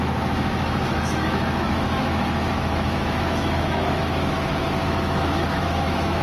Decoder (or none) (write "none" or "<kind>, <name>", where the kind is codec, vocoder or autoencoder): autoencoder, DAC-VAE